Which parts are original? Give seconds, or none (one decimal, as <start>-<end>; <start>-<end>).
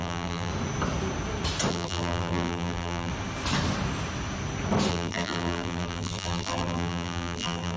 0.5-1.7; 3.1-4.9